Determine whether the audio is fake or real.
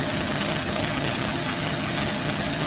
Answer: fake